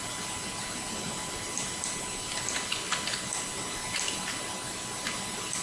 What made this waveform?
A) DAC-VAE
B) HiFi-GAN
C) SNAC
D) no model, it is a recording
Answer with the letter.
D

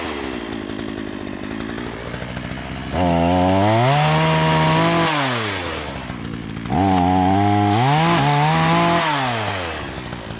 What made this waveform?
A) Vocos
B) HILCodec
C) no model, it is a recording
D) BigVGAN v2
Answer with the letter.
C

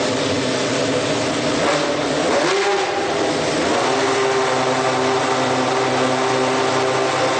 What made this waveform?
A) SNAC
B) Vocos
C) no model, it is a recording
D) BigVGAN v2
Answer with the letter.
C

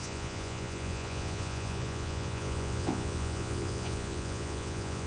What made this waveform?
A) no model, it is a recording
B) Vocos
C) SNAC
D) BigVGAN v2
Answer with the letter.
B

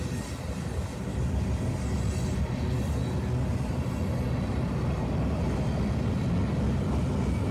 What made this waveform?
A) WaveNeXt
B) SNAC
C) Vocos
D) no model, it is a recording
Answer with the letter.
D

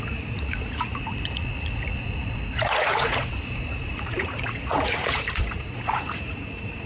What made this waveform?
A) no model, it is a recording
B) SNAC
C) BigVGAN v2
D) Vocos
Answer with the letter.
D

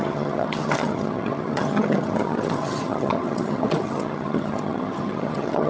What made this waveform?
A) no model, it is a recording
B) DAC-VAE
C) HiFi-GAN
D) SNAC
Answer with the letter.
C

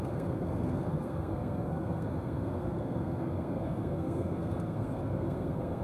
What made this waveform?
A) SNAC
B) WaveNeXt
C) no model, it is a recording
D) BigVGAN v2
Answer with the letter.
A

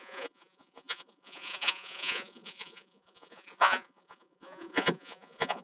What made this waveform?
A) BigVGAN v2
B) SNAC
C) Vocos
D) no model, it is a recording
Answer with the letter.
C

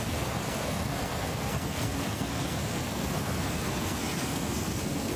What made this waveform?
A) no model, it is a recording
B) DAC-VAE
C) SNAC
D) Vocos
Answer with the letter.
C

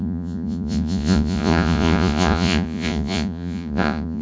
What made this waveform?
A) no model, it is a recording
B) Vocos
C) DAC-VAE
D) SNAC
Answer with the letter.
B